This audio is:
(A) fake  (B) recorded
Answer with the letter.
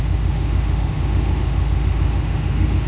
A